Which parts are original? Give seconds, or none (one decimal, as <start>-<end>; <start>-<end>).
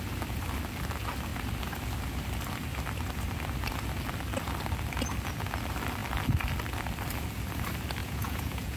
0.0-8.0